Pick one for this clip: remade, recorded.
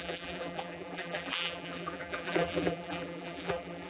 remade